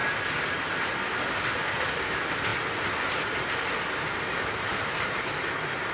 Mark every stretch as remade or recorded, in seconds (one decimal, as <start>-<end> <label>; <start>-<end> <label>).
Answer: 0.0-5.9 recorded